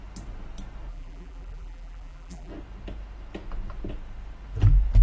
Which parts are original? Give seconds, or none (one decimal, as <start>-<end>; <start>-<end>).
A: 0.0-0.9; 2.5-5.0